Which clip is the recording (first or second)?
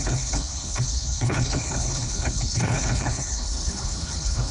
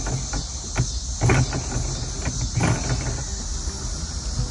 second